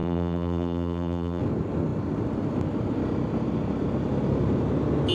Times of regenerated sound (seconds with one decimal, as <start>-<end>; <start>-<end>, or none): 0.0-1.4